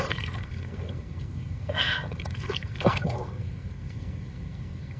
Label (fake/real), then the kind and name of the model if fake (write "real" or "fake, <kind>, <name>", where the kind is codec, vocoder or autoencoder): fake, codec, SNAC